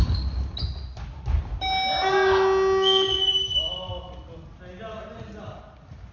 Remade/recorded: recorded